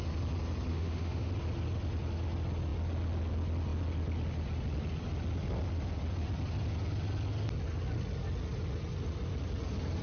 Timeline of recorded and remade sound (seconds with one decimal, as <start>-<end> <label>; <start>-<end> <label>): 0.0-0.7 recorded; 0.7-1.3 remade; 1.3-10.0 recorded